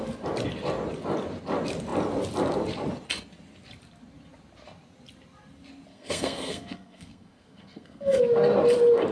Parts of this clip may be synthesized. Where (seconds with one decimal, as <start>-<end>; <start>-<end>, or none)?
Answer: 5.9-8.2